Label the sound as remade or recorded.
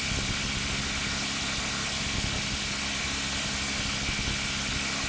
recorded